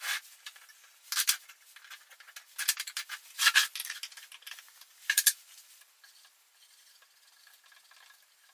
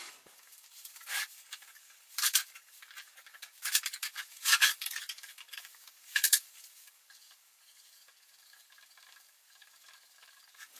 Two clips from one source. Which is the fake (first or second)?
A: second